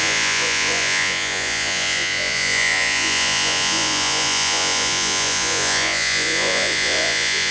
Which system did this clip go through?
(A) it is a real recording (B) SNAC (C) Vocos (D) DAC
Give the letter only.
C